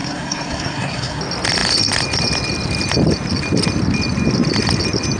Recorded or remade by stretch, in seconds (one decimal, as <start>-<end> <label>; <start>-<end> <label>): 0.0-1.2 remade; 1.2-5.2 recorded

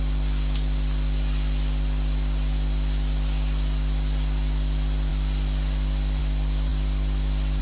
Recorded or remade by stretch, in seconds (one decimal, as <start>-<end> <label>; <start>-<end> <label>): 0.0-7.6 recorded